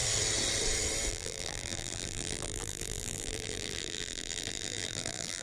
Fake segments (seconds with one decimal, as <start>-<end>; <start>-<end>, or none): 1.1-5.4